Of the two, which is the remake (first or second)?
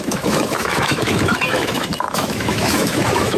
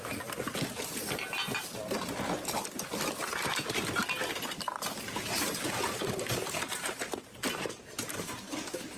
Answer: first